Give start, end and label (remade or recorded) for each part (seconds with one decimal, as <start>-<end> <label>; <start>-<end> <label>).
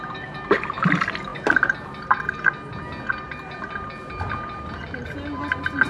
0.0-5.9 recorded